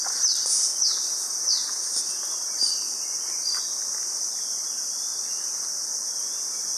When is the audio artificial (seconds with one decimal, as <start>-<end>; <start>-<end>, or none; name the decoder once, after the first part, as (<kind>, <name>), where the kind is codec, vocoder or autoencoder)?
none